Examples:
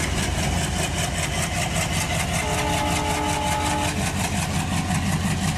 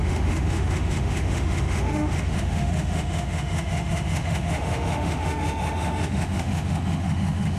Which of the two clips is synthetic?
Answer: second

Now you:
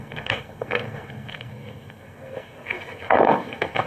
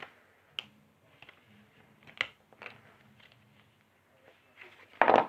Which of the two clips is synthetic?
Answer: first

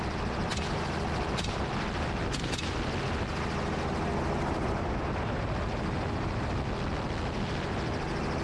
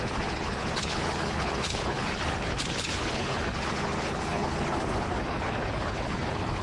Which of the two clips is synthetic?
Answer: second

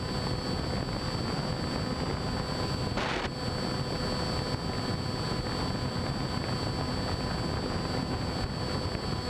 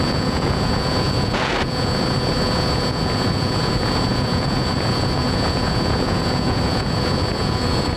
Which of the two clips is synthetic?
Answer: second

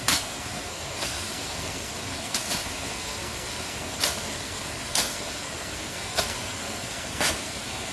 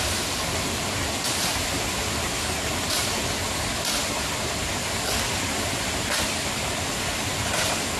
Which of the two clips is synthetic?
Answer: first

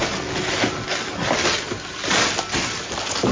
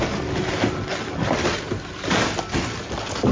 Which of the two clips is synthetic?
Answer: second